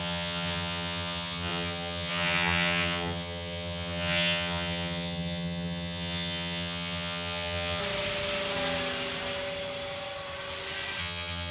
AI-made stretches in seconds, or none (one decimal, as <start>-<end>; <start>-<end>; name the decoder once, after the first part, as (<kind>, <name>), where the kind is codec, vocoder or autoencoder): 0.0-7.8 (vocoder, HiFi-GAN); 11.0-11.5